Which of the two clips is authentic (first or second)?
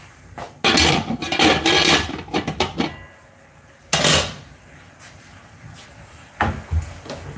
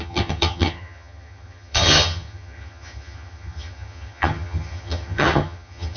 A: first